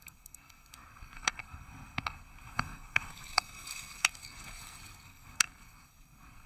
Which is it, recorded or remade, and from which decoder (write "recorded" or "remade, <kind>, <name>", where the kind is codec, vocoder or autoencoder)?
remade, codec, SNAC